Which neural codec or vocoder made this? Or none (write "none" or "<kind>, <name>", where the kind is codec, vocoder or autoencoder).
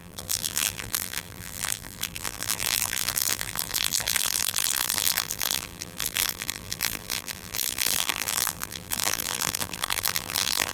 vocoder, BigVGAN v2